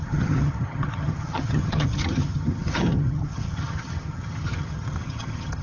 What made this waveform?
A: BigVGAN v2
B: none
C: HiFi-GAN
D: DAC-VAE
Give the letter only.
C